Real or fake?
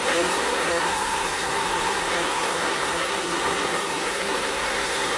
fake